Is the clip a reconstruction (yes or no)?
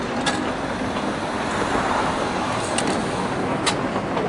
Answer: no